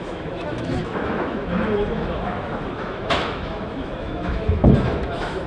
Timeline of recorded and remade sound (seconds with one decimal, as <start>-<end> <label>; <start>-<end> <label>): 0.0-5.5 remade